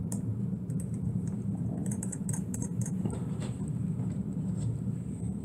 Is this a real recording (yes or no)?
no